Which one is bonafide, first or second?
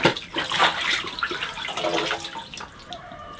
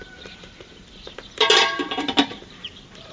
first